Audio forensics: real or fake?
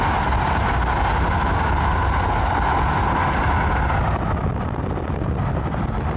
real